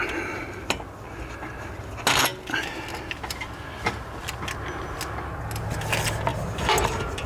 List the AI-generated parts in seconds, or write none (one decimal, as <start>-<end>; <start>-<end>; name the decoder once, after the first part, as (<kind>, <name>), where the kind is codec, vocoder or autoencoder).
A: none